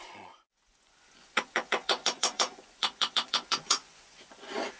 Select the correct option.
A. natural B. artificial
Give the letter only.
B